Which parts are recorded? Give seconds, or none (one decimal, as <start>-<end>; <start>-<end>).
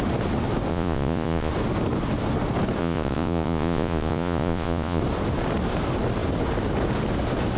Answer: 0.0-0.7; 1.5-2.8; 5.0-7.6